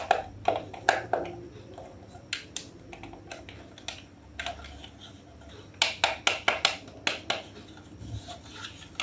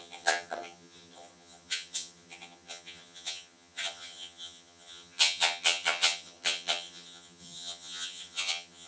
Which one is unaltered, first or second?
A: first